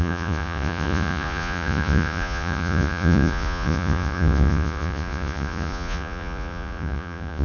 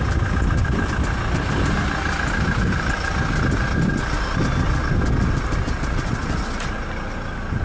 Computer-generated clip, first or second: first